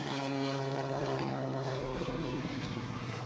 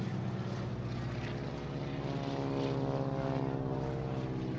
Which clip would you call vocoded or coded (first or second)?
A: first